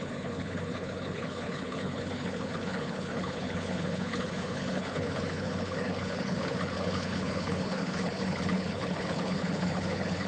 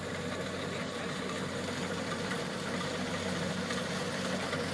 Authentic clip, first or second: second